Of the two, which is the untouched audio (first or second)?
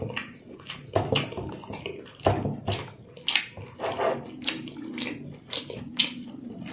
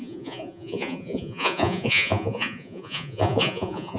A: first